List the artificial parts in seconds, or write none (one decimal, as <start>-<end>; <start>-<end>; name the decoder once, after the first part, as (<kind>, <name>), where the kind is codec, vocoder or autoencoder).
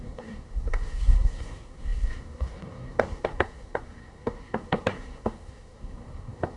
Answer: 0.0-6.6 (codec, SNAC)